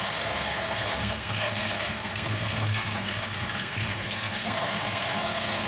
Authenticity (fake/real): fake